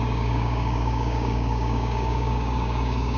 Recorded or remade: remade